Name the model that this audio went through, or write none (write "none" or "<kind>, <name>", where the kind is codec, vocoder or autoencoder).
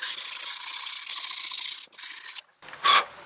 none